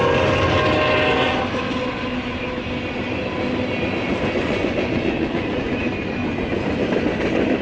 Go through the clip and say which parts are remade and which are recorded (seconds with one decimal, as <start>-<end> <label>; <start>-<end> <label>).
0.0-4.4 recorded; 4.4-5.8 remade; 5.8-6.2 recorded; 6.2-6.8 remade; 6.8-7.6 recorded